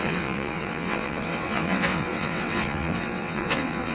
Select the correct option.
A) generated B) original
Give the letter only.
A